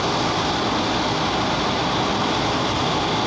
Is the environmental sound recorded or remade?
recorded